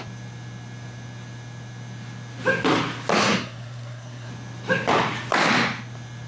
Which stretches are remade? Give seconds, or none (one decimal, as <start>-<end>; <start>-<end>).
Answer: 3.2-4.3